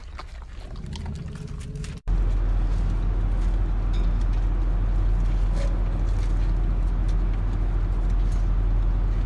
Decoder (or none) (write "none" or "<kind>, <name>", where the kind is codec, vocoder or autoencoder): none